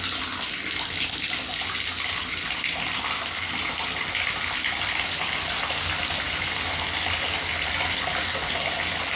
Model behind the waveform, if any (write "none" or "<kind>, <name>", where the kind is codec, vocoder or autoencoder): none